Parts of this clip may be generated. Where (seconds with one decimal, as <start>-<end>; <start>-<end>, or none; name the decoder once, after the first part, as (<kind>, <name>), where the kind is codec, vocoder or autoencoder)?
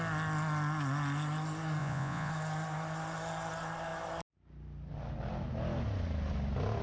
1.8-2.3 (vocoder, Vocos)